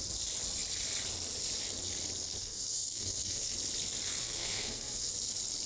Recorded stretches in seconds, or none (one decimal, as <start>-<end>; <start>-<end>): 0.0-2.4; 3.5-4.2; 5.1-5.7